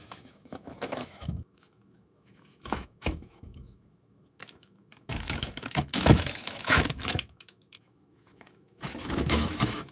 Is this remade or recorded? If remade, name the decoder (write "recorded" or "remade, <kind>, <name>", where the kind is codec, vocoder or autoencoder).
remade, autoencoder, DAC-VAE